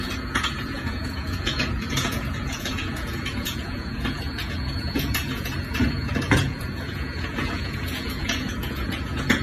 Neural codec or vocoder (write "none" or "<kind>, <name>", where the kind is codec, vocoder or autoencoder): vocoder, Vocos